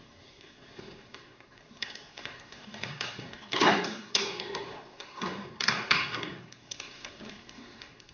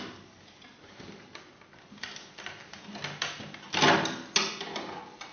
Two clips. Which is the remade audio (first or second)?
first